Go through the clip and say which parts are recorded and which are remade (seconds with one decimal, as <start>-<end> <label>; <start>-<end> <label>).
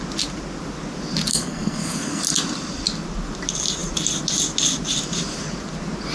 0.0-1.3 recorded; 1.3-2.2 remade; 2.2-6.1 recorded